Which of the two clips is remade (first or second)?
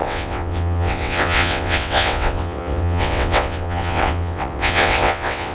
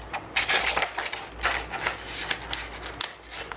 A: first